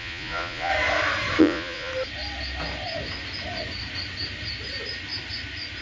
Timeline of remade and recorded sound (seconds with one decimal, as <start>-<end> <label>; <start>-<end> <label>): 0.0-0.7 remade; 0.7-1.4 recorded; 1.4-1.9 remade; 1.9-5.8 recorded